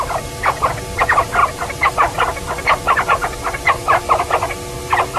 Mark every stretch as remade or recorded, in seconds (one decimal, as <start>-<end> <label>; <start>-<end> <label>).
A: 0.0-1.4 recorded; 1.4-1.9 remade; 1.9-5.2 recorded